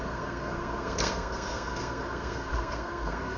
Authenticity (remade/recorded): remade